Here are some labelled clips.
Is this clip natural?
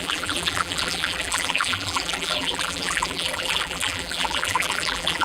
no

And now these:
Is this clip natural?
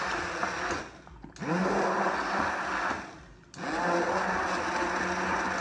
yes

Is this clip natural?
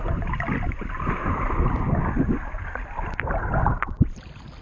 yes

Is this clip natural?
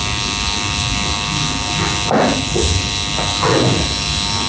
yes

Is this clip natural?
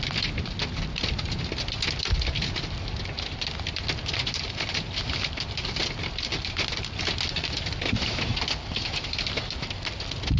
yes